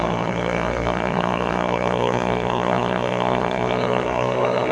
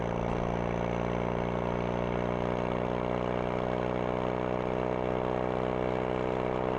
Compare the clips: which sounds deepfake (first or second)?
first